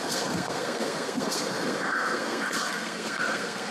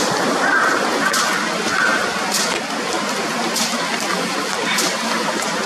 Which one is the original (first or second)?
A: second